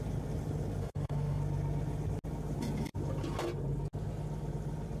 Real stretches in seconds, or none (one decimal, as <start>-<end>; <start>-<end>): 0.0-0.8; 1.4-5.0